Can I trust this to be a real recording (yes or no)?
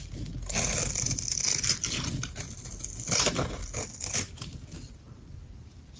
yes